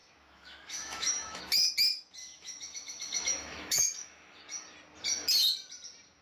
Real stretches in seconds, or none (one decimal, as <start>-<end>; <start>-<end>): 1.4-2.2; 4.4-6.2